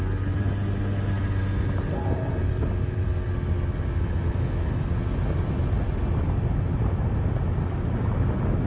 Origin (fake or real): real